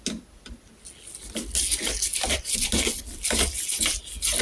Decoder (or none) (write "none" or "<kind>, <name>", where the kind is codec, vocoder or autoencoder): none